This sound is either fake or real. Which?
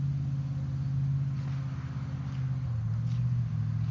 real